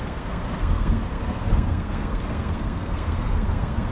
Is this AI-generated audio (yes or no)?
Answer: yes